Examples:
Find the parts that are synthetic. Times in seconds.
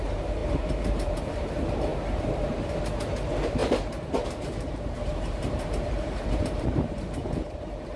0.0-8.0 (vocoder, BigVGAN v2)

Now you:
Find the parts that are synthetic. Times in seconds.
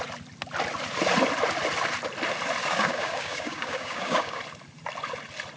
2.6-4.4 (codec, DAC)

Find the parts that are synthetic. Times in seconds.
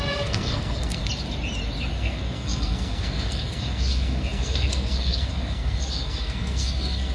0.0-1.0 (codec, SNAC); 1.9-7.1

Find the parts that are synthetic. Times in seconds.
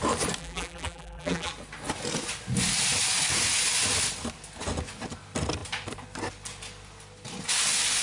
0.4-1.5 (vocoder, BigVGAN v2)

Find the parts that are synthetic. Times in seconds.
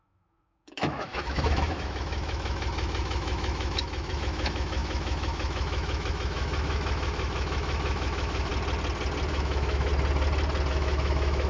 0.0-8.5 (autoencoder, DAC-VAE); 9.3-9.9; 10.7-11.5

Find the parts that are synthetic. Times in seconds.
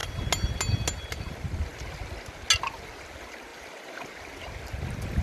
3.5-4.1 (vocoder, BigVGAN v2)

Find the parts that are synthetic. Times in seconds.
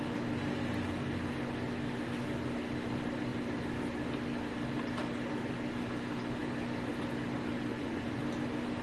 7.7-8.2 (vocoder, Vocos)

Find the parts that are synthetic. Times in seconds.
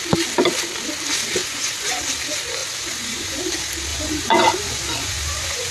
1.4-2.0 (vocoder, Vocos); 2.6-3.4; 3.9-5.7